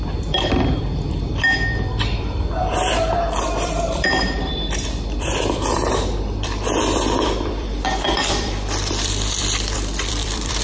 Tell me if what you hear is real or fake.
fake